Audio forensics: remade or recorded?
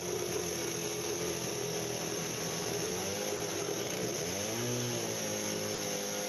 recorded